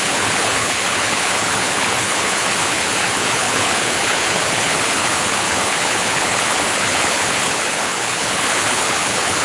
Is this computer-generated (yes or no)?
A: yes